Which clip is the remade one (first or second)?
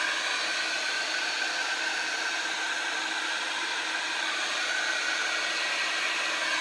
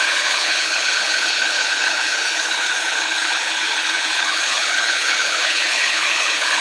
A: second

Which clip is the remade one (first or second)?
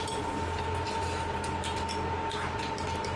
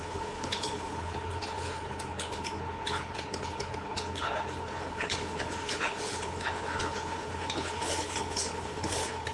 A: second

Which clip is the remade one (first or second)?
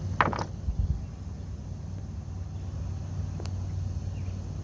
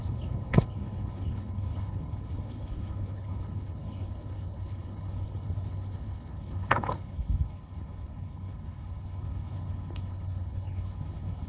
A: second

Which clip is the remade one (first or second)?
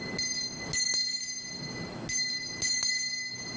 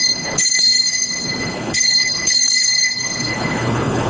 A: second